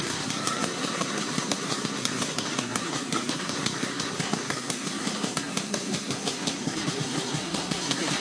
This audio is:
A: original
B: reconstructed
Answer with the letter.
B